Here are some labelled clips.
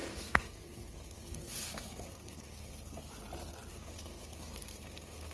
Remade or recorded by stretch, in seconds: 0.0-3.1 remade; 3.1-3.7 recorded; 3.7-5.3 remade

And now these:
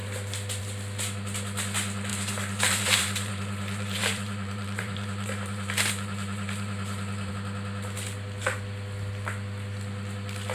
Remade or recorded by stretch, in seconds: 0.0-2.1 recorded; 2.1-7.3 remade; 7.3-10.5 recorded

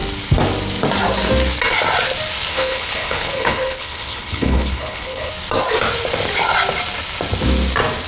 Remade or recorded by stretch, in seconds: 0.0-2.5 recorded; 2.5-5.3 remade; 5.3-8.1 recorded

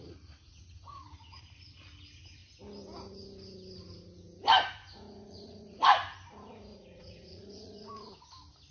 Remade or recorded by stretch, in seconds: 0.0-1.4 remade; 1.4-4.8 recorded; 4.8-5.8 remade; 5.8-6.7 recorded; 6.7-7.9 remade; 7.9-8.7 recorded

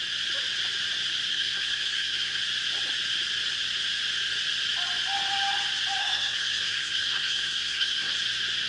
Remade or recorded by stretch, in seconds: 0.0-1.3 recorded; 1.3-2.4 remade; 2.4-6.0 recorded; 6.0-8.1 remade; 8.1-8.7 recorded